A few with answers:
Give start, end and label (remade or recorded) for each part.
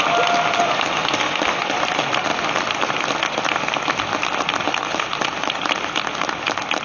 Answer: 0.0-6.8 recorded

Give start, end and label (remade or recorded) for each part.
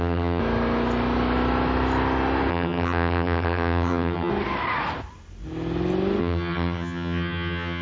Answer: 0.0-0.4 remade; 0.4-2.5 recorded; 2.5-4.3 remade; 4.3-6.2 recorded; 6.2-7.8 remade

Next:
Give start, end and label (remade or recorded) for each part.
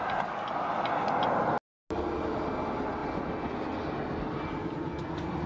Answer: 0.0-5.5 recorded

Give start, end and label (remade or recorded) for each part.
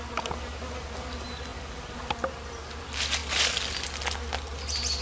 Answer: 0.0-5.0 recorded